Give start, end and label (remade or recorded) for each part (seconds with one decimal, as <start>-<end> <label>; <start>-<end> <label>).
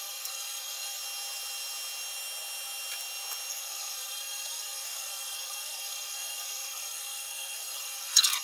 0.0-1.0 remade; 1.0-3.5 recorded; 3.5-8.4 remade